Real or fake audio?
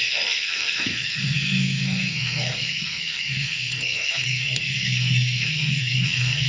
fake